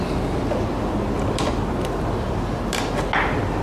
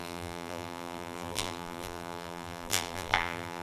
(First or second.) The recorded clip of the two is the first